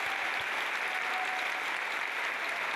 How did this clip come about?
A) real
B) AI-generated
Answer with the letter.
A